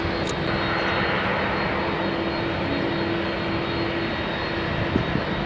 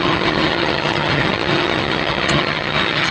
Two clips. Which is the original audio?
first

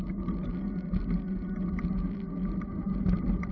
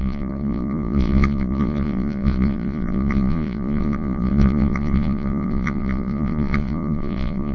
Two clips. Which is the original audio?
first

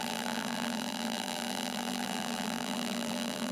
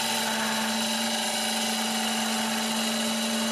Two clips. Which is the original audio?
second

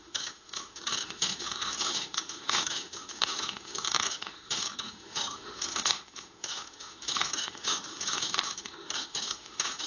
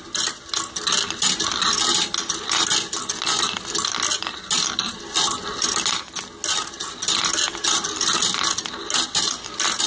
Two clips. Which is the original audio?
second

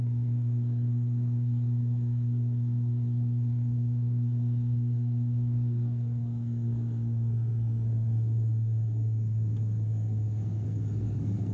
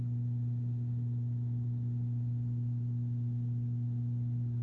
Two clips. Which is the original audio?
second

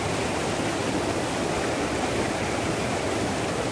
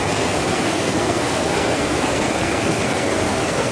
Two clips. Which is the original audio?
first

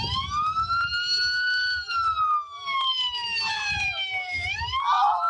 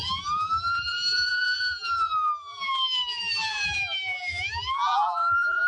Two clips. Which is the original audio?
first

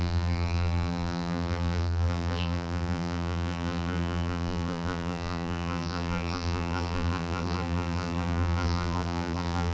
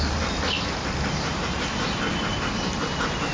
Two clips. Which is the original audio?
second